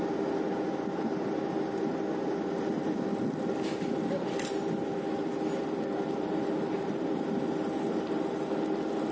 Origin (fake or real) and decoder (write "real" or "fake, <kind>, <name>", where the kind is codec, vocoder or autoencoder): real